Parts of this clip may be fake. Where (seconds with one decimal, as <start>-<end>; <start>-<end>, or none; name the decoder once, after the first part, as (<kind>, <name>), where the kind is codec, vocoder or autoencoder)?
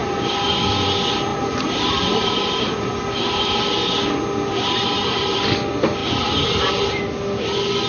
0.0-0.6 (vocoder, BigVGAN v2); 1.3-3.6; 4.5-5.4; 6.0-6.7